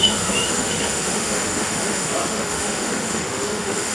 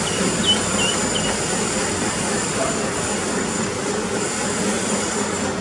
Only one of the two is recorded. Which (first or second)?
second